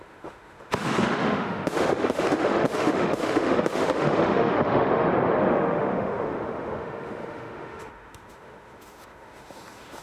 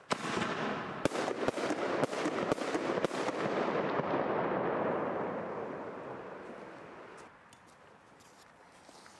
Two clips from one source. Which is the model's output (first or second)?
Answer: first